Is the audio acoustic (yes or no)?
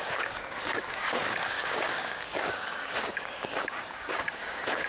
no